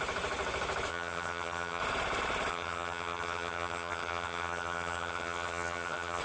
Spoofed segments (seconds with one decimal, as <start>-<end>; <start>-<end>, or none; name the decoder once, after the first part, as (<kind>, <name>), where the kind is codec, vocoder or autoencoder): 0.9-1.8 (vocoder, HiFi-GAN); 2.5-6.2